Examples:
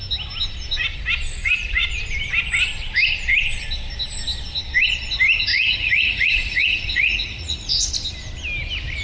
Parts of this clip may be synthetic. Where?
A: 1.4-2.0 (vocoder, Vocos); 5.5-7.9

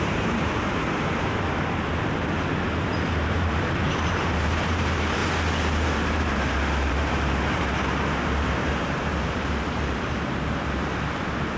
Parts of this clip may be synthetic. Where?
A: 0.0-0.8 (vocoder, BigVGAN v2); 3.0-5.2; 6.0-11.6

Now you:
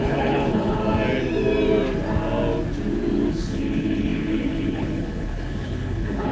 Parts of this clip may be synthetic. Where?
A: 0.0-0.8 (codec, HILCodec); 3.3-6.3

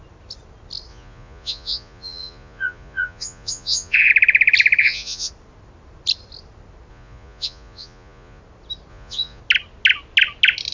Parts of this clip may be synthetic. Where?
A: 0.9-4.1 (vocoder, Vocos); 4.8-5.3; 6.9-8.4; 8.9-9.4

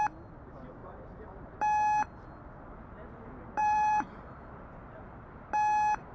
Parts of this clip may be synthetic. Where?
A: 0.8-1.5 (vocoder, BigVGAN v2); 3.6-4.5

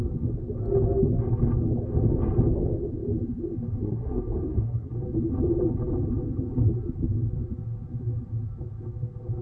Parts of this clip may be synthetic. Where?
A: 3.8-4.9 (codec, SNAC)

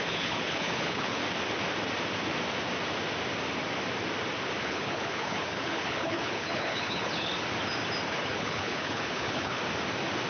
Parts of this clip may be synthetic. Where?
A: 0.0-1.2 (codec, HILCodec); 4.6-7.3; 8.1-9.6